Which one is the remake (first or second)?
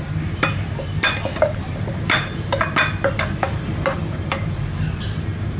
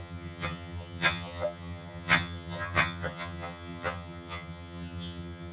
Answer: second